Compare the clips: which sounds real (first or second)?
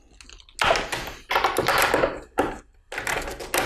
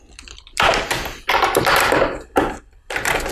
first